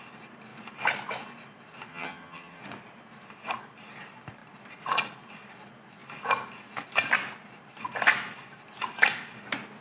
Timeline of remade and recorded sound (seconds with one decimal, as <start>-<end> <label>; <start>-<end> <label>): 0.0-1.9 recorded; 1.9-2.6 remade; 2.6-9.8 recorded